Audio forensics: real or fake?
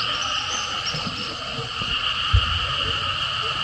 real